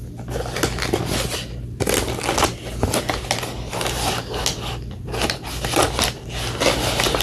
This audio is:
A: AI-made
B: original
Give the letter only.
B